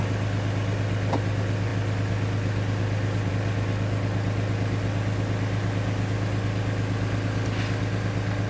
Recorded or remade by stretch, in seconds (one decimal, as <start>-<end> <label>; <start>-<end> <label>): 0.0-8.5 recorded